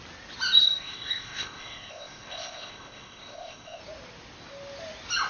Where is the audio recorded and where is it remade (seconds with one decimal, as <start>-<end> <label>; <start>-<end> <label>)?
0.0-0.6 recorded; 0.6-3.8 remade; 3.8-5.3 recorded